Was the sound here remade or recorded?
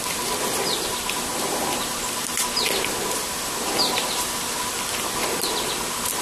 recorded